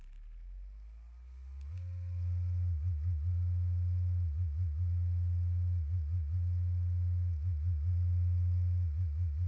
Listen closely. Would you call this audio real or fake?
real